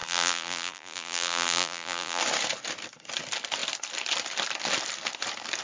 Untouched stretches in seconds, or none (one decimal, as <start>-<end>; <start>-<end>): 2.2-5.6